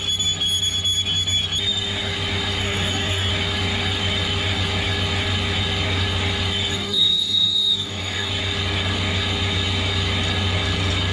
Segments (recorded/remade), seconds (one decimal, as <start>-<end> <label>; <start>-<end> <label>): 0.0-2.6 recorded; 2.6-3.3 remade; 3.3-6.7 recorded; 6.7-8.3 remade; 8.3-11.1 recorded